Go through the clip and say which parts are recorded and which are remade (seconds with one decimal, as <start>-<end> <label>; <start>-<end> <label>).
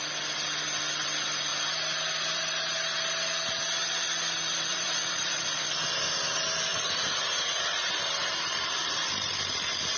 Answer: 0.0-4.7 recorded; 4.7-5.4 remade; 5.4-6.7 recorded; 6.7-7.9 remade; 7.9-10.0 recorded